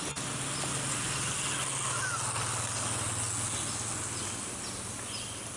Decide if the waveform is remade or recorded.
recorded